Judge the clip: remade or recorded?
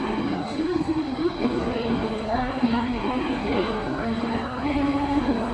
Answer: remade